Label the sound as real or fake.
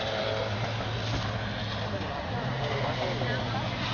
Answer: real